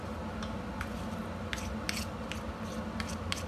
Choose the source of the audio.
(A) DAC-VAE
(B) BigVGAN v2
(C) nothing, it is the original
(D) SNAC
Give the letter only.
C